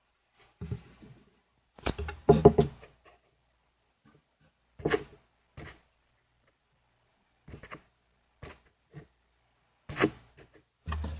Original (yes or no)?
yes